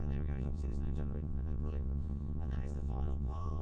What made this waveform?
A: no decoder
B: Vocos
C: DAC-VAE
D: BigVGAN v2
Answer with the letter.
B